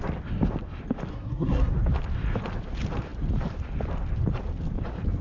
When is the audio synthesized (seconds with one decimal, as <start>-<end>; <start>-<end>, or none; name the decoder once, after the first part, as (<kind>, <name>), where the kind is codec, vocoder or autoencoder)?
1.1-1.7 (codec, SNAC)